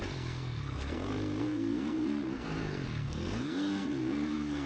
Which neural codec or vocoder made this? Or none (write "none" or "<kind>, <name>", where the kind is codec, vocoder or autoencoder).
codec, SNAC